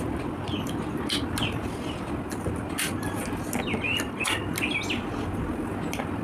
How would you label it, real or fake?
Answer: real